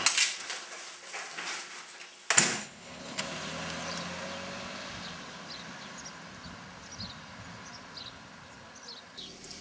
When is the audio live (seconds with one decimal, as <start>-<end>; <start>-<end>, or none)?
0.0-2.6; 3.2-9.6